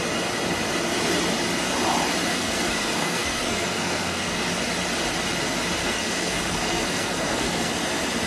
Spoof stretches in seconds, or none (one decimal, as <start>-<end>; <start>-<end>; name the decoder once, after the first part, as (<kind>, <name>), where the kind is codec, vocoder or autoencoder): 2.3-4.5 (codec, SNAC); 5.8-7.7